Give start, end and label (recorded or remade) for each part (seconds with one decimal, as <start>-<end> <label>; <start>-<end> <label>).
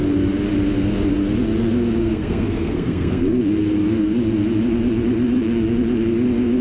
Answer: 0.0-2.0 recorded; 2.0-3.4 remade; 3.4-6.6 recorded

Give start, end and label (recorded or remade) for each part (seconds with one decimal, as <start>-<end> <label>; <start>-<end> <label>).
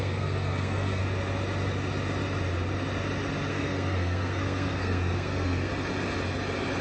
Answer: 0.0-1.0 remade; 1.0-3.5 recorded; 3.5-5.7 remade; 5.7-6.8 recorded